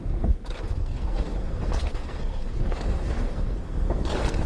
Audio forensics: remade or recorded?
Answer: remade